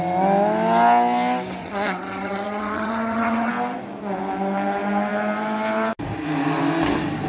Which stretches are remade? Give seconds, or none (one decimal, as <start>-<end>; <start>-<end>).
1.6-3.5